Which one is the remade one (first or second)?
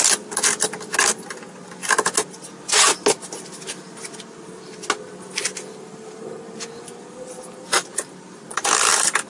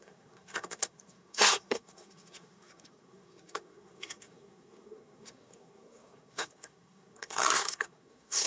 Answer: second